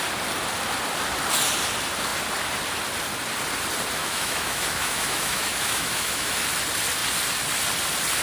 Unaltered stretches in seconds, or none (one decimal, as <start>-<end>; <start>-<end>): 0.0-4.0; 6.4-8.2